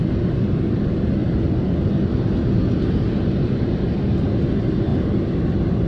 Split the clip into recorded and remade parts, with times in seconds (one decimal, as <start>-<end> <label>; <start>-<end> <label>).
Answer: 0.0-5.9 recorded